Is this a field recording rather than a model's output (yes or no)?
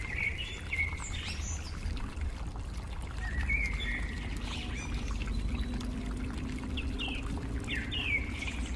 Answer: yes